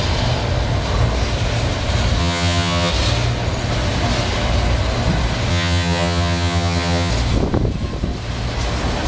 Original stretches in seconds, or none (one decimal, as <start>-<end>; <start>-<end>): 0.0-2.2; 2.9-5.5; 7.1-9.1